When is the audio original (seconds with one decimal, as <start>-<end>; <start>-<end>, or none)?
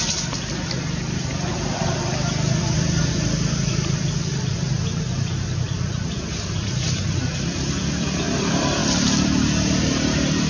none